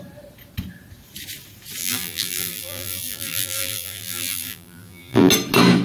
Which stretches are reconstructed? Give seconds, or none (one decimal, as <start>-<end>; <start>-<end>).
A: 1.8-5.3